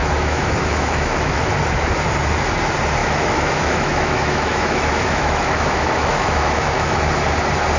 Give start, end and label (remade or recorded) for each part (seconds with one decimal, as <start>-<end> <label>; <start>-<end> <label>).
0.0-1.5 remade; 1.5-3.0 recorded; 3.0-7.1 remade; 7.1-7.8 recorded